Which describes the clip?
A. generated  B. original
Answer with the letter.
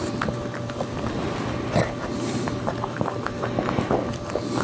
B